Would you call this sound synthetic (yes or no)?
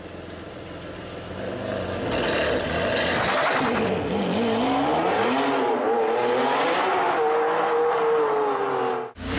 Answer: no